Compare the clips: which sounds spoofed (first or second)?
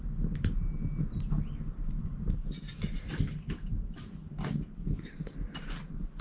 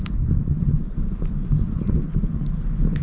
second